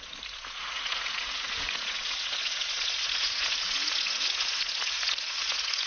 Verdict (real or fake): fake